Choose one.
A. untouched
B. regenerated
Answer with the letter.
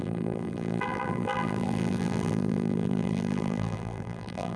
B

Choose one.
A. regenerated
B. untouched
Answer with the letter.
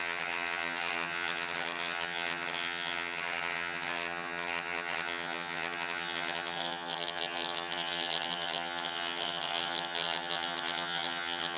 A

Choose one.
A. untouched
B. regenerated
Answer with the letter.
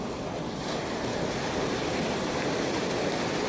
A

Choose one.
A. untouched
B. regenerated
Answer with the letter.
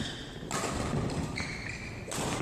A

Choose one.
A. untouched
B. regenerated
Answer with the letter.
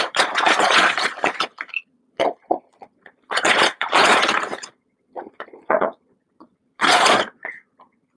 B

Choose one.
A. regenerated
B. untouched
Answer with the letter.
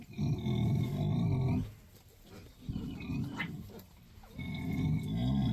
B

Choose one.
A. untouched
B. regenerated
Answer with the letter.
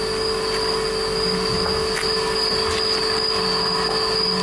A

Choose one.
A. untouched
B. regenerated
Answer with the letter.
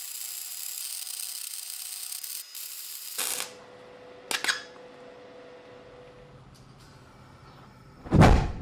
A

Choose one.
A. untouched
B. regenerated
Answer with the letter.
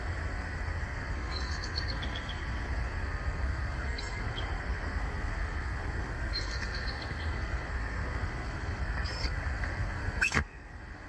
B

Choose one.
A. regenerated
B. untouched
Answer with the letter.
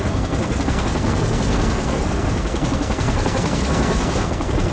A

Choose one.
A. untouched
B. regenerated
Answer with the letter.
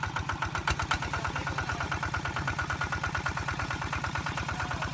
B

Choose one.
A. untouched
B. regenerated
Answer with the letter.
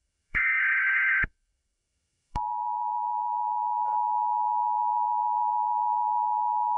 B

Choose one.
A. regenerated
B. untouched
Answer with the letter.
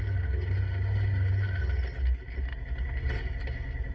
B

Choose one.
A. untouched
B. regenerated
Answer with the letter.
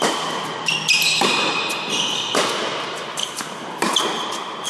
A